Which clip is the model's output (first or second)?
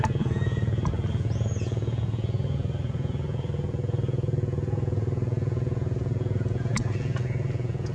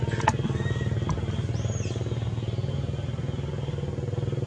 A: first